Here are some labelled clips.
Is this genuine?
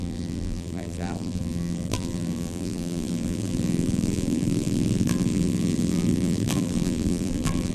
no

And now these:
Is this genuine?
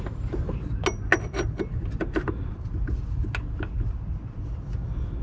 yes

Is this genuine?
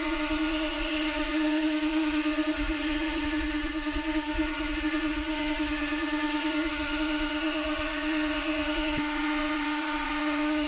no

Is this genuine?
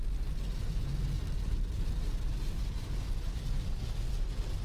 yes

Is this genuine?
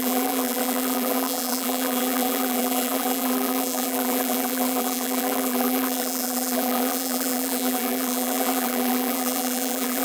no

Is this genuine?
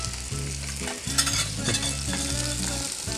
yes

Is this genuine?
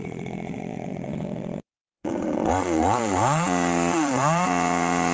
no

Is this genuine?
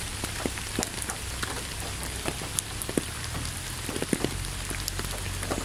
yes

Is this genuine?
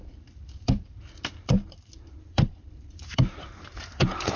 no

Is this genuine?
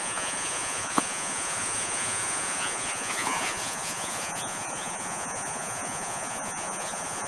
no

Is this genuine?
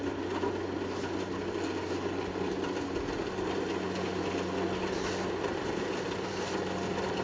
yes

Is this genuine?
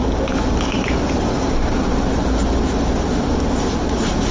yes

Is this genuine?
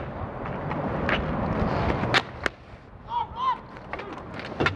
yes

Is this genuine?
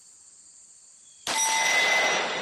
yes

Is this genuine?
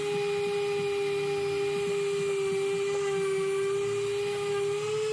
yes